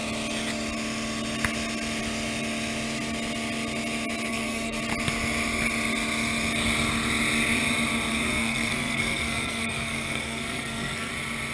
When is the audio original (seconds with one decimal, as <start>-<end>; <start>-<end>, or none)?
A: 0.0-4.3; 4.8-8.1; 11.1-11.5